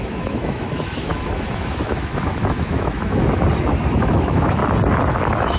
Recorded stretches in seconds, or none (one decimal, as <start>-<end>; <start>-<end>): 3.2-4.0; 4.6-5.1